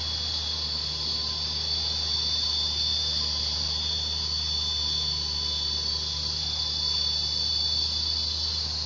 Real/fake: real